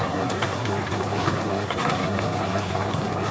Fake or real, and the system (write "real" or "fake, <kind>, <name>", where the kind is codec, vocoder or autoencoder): fake, codec, SNAC